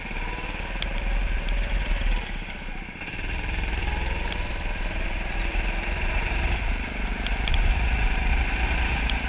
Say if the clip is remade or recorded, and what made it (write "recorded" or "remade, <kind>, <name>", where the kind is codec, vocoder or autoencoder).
remade, vocoder, BigVGAN v2